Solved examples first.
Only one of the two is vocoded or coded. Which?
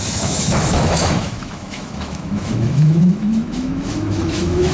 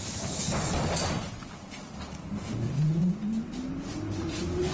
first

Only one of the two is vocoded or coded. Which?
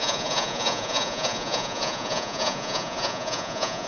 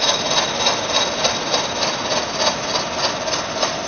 first